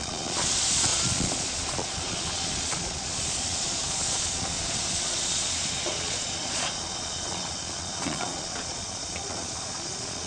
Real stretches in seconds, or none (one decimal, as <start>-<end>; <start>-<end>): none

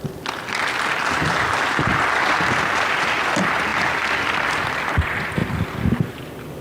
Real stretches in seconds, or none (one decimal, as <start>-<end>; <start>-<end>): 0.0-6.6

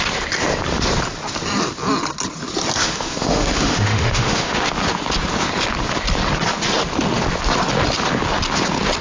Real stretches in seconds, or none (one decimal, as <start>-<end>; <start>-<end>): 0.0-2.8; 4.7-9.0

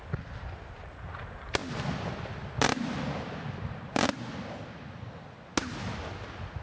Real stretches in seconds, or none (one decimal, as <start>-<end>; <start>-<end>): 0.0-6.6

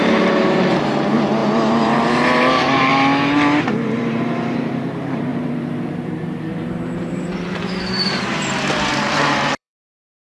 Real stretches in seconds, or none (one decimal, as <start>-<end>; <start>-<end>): 2.9-3.7

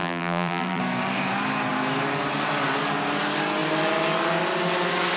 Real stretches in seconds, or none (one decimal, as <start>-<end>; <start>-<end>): 0.8-5.2

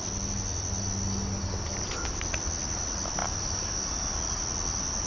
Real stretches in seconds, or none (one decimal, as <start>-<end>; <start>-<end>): 0.0-5.1

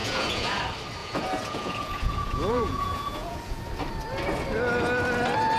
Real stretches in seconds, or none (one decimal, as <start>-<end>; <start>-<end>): 0.6-1.0; 3.6-5.6